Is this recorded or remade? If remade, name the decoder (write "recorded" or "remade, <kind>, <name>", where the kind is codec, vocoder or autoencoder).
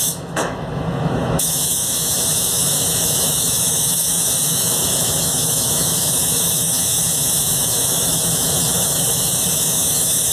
remade, autoencoder, DAC-VAE